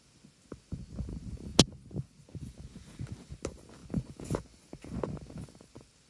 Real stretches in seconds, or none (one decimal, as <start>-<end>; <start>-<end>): 0.0-6.1